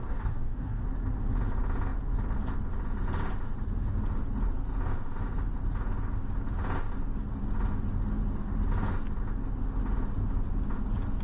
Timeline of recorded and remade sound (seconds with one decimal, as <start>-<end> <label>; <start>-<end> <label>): 0.0-0.8 remade; 0.8-11.2 recorded